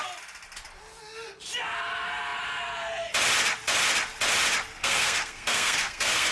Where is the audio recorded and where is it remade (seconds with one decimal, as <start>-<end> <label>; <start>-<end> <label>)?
0.0-4.8 recorded; 4.8-6.3 remade